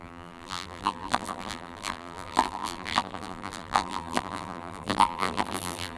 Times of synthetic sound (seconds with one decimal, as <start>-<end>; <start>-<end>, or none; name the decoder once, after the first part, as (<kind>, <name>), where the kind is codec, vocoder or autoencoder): 0.0-6.0 (vocoder, BigVGAN v2)